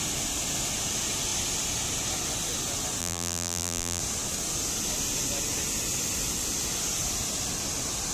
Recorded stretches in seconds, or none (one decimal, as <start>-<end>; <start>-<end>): 0.0-3.0; 4.0-8.1